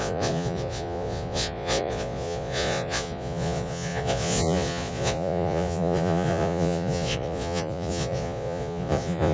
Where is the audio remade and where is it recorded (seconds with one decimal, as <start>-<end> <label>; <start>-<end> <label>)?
0.0-9.3 remade